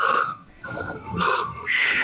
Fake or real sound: fake